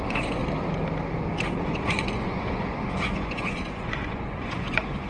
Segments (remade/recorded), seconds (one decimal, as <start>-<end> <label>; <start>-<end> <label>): 0.0-0.4 remade; 0.4-1.5 recorded; 1.5-5.1 remade